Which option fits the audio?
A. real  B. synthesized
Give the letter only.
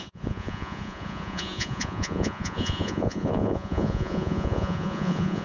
B